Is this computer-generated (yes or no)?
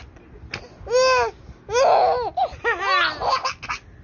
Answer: no